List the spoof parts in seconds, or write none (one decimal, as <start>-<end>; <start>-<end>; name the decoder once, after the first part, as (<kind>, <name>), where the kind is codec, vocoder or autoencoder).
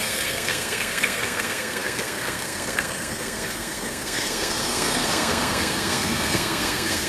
0.0-7.1 (codec, SNAC)